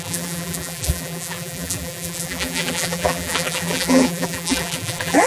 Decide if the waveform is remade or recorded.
remade